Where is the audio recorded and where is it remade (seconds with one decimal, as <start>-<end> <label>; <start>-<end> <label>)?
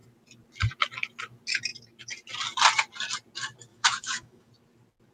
0.0-3.7 recorded; 3.7-4.5 remade; 4.5-5.1 recorded